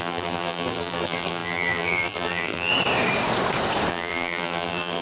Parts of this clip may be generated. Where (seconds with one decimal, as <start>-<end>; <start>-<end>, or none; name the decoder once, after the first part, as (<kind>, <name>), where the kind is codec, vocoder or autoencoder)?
0.0-2.7 (vocoder, BigVGAN v2); 3.9-5.0